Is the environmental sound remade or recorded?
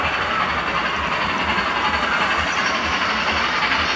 recorded